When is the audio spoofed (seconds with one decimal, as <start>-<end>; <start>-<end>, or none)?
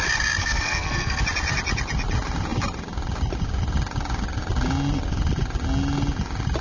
0.4-1.2